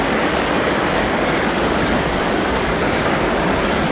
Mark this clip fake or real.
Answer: fake